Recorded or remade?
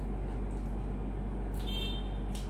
recorded